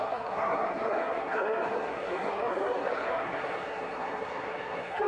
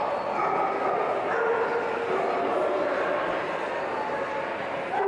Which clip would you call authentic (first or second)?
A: second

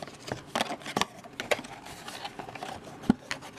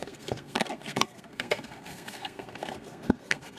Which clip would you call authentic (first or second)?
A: first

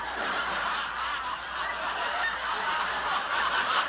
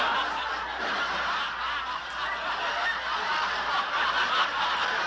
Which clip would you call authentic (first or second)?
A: second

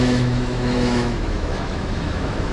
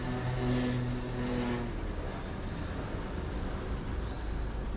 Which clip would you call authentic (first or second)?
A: second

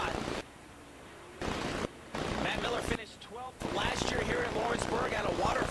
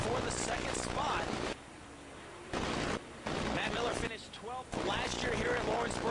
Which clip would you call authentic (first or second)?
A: second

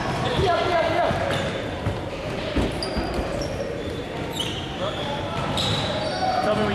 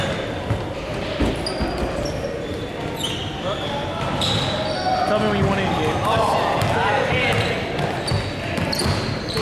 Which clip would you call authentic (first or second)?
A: second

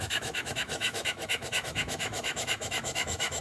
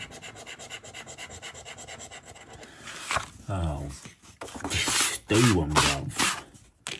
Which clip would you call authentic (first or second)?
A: second